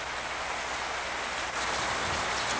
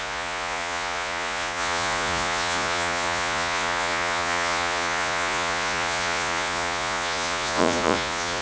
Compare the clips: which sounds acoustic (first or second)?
first